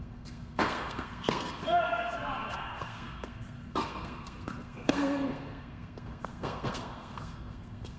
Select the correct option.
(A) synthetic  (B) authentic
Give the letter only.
A